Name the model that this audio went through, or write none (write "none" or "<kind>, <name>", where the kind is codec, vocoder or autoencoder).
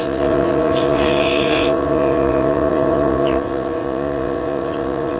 vocoder, WaveNeXt